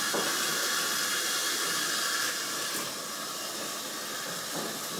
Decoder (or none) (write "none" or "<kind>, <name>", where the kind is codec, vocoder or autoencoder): none